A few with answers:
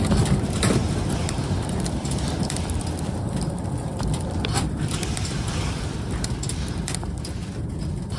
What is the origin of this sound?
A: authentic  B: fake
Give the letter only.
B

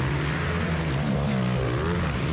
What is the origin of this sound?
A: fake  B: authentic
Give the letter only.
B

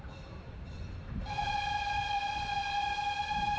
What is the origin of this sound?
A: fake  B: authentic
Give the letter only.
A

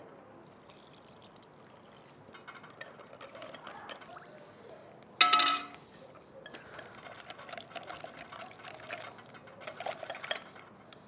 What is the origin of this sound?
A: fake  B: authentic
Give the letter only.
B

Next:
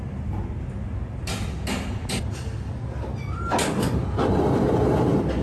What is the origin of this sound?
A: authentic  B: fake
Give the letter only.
A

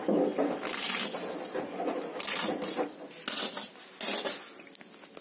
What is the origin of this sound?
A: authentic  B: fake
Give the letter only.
A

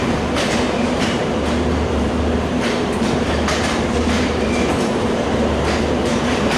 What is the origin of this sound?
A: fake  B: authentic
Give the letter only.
A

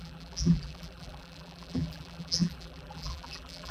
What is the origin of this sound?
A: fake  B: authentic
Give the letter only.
A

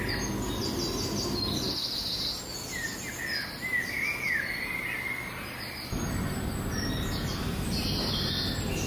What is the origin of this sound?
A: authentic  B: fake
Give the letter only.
A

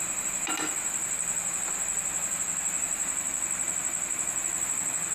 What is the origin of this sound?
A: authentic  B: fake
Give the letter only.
A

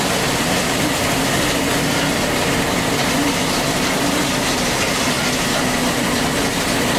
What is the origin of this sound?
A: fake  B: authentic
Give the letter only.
B